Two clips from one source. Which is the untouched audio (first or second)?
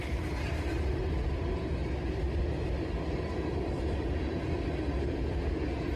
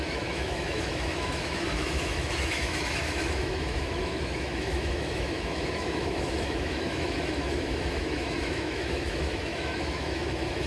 first